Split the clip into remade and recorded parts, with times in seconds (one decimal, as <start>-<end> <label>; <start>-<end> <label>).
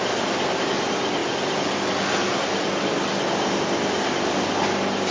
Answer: 0.0-5.1 recorded